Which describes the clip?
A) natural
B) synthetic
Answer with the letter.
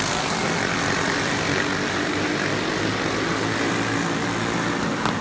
A